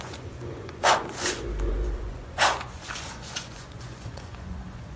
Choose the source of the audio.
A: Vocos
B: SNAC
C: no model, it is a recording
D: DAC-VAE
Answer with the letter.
A